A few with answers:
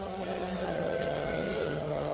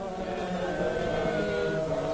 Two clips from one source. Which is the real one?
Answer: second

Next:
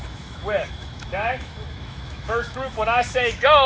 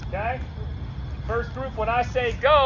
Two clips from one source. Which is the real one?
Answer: second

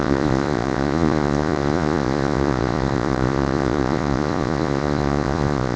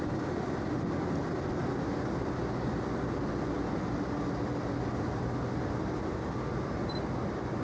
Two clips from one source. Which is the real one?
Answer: second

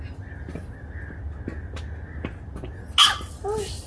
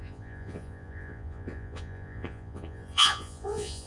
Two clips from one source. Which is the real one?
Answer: first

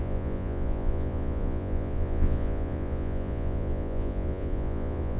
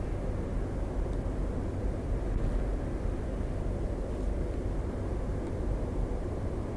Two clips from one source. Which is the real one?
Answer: second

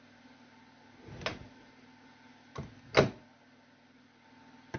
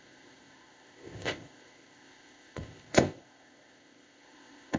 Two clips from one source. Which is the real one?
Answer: first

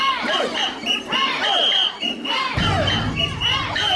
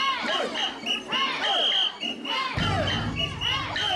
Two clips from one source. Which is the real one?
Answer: second